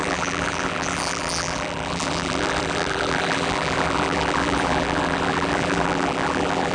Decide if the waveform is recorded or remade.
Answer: remade